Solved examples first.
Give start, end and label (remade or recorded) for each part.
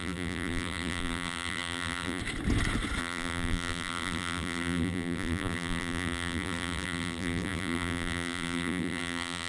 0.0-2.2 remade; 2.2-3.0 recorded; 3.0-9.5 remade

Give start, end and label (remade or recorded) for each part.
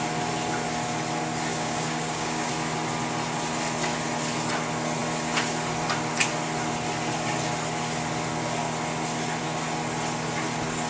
0.0-1.5 recorded; 1.5-2.5 remade; 2.5-10.9 recorded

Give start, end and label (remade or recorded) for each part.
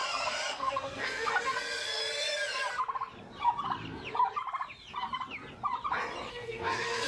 0.0-0.5 recorded; 0.5-2.0 remade; 2.0-6.3 recorded; 6.3-7.1 remade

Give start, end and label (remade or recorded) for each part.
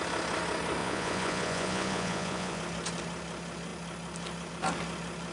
0.0-0.8 recorded; 0.8-2.6 remade; 2.6-5.3 recorded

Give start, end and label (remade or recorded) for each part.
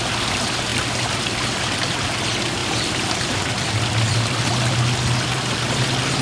0.0-0.7 recorded; 0.7-1.9 remade; 1.9-2.6 recorded; 2.6-6.2 remade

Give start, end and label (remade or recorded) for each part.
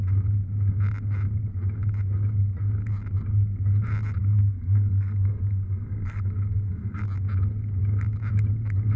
0.0-4.2 recorded; 4.2-7.0 remade; 7.0-9.0 recorded